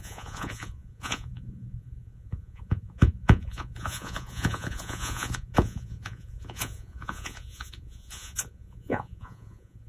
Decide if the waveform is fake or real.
fake